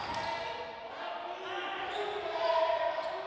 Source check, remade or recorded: recorded